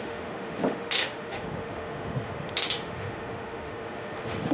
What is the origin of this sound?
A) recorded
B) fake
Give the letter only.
B